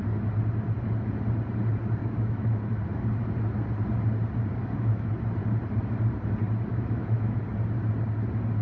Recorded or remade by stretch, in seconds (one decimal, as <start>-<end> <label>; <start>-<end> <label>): 0.0-2.0 recorded; 2.0-2.6 remade; 2.6-4.6 recorded; 4.6-5.1 remade; 5.1-6.7 recorded; 6.7-7.4 remade; 7.4-8.6 recorded